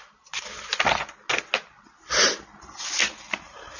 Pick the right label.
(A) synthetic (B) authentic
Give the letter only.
B